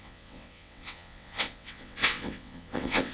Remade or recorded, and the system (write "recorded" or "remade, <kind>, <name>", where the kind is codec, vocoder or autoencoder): remade, vocoder, WaveNeXt